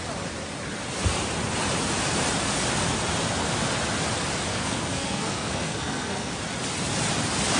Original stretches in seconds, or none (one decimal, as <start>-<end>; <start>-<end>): 0.0-4.5; 6.3-7.6